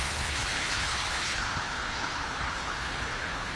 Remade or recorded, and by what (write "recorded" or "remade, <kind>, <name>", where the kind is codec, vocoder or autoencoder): remade, codec, HILCodec